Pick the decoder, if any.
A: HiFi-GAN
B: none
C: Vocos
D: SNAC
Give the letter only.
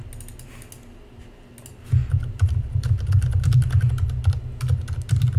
B